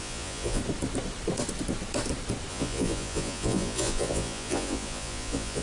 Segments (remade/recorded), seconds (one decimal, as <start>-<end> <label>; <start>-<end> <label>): 0.0-0.6 remade; 0.6-2.5 recorded; 2.5-5.6 remade